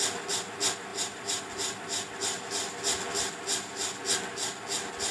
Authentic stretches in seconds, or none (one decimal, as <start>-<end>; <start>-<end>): 0.0-0.9; 4.0-5.1